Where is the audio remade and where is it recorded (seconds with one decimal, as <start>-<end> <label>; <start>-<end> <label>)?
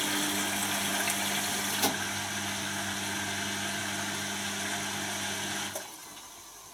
0.0-6.7 recorded